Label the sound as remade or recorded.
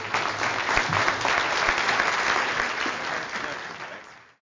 recorded